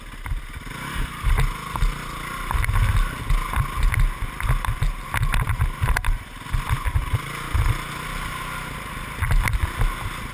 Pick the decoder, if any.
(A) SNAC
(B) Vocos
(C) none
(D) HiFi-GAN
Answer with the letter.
C